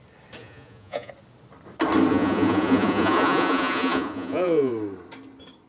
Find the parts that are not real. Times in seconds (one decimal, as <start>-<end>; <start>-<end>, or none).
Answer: 0.4-1.1; 2.1-4.7